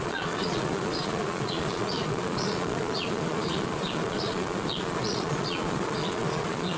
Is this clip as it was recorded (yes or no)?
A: no